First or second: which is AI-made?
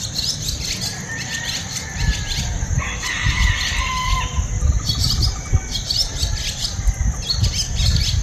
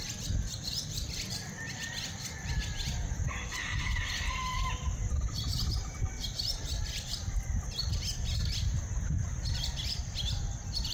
second